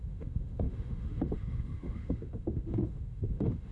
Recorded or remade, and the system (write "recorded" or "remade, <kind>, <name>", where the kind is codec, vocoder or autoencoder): remade, autoencoder, DAC-VAE